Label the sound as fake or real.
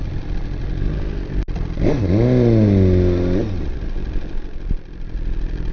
real